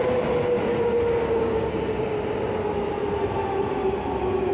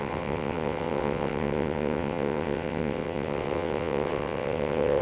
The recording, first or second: first